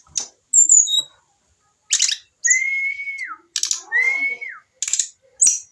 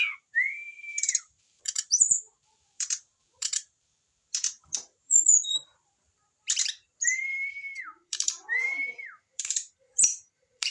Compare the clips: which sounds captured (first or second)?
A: first